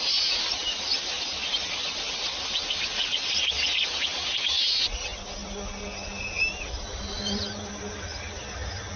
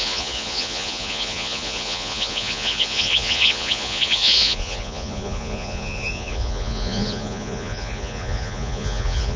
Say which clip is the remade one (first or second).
second